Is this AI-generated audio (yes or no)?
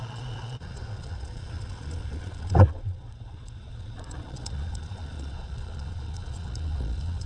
yes